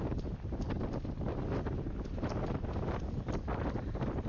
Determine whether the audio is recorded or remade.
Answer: recorded